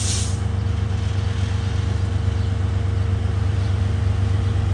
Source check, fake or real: real